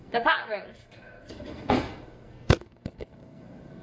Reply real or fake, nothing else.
fake